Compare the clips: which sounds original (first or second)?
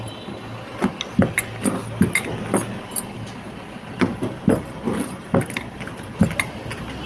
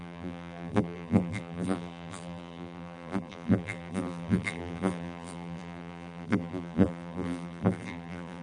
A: first